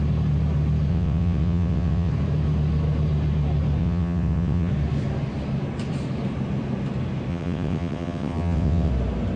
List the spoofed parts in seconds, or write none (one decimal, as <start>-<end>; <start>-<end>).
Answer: 0.9-2.1; 3.8-4.7; 7.3-8.9